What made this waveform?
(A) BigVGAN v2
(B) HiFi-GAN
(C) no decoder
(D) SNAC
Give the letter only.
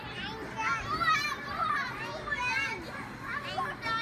C